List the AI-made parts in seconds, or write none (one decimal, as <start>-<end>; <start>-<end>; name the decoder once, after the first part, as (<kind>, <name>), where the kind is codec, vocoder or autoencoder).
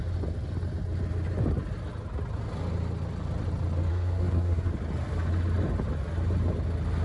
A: 3.9-4.7 (codec, SNAC)